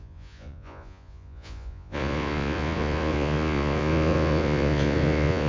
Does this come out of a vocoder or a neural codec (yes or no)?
yes